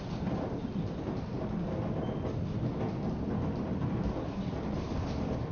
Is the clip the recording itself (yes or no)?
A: yes